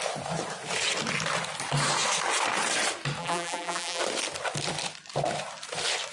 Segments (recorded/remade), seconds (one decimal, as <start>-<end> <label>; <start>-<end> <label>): 0.0-3.2 recorded; 3.2-4.0 remade; 4.0-6.1 recorded